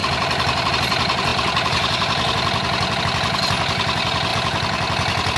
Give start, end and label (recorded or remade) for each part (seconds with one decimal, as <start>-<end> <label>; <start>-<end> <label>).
0.0-5.4 recorded